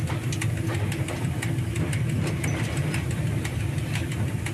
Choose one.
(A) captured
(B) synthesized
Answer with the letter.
A